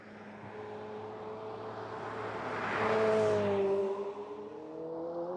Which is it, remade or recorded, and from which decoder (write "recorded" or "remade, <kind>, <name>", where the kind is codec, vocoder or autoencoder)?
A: recorded